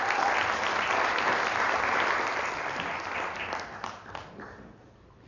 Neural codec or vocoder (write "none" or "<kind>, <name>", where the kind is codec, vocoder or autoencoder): vocoder, BigVGAN v2